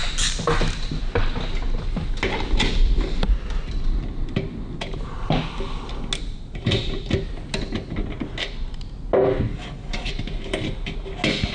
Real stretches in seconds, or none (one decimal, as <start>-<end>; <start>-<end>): 0.0-9.5; 10.1-11.5